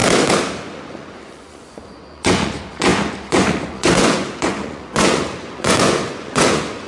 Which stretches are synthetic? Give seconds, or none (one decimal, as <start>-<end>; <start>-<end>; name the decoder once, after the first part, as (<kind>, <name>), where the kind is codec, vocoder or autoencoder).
0.7-6.9 (vocoder, Vocos)